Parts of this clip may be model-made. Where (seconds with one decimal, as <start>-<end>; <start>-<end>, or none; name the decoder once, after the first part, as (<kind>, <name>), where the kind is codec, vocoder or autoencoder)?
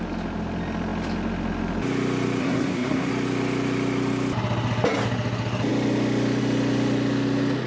2.4-3.1 (codec, SNAC)